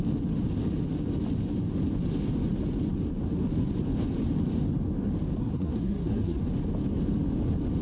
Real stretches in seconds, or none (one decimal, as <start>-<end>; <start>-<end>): 0.0-5.4; 6.4-7.8

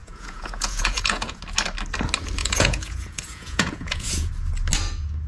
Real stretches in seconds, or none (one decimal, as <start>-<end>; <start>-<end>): 1.4-2.4; 4.3-5.3